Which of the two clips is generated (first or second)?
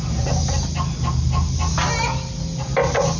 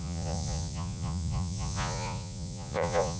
second